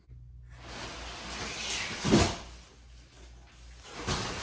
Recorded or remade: recorded